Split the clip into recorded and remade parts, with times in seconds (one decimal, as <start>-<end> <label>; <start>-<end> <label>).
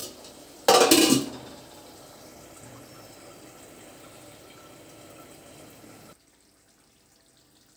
0.0-7.8 recorded